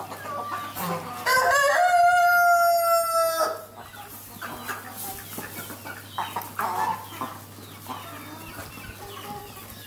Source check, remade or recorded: recorded